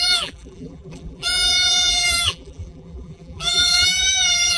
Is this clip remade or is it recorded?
remade